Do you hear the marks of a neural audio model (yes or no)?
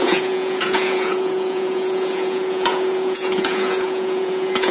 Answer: yes